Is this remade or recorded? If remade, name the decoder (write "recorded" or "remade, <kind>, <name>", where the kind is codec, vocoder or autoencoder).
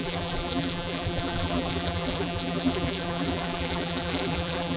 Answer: remade, vocoder, BigVGAN v2